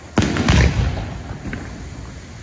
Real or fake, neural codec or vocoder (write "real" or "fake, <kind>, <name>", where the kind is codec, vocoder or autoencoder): real